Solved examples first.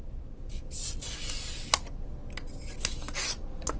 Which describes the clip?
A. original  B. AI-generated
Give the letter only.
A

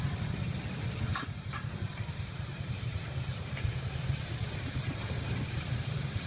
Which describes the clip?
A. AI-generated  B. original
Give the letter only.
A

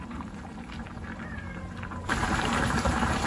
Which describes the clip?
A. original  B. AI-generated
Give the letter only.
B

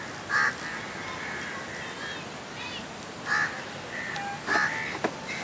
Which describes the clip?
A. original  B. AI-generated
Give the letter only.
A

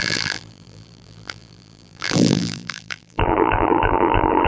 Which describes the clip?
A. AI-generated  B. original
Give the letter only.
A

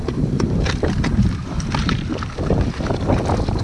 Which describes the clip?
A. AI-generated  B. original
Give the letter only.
B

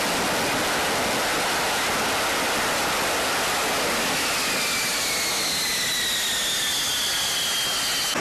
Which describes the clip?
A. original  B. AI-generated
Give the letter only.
A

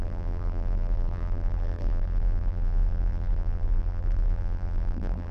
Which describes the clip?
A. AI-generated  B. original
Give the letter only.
A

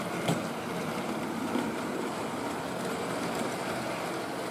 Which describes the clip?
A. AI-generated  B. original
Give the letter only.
A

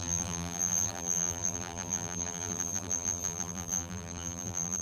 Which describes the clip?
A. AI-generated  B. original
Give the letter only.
A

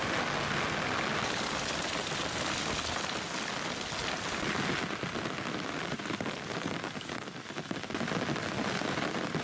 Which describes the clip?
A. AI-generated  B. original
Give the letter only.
B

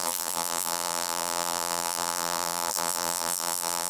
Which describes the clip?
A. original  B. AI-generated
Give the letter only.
B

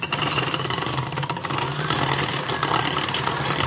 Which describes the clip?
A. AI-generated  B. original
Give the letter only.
A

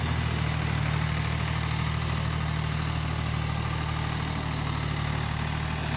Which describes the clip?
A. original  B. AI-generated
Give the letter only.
A